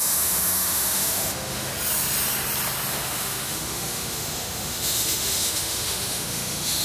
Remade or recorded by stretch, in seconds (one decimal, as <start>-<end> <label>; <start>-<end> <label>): 0.0-1.7 remade; 1.7-2.9 recorded; 2.9-6.8 remade